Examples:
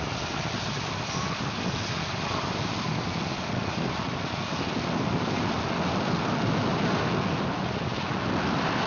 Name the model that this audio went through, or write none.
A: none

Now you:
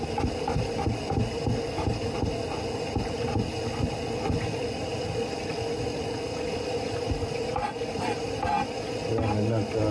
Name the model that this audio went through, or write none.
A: none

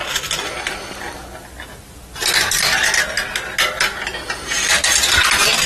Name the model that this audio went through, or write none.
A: none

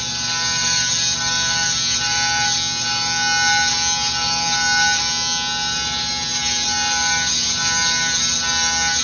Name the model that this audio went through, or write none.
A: none